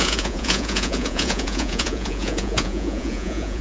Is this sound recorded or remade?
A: remade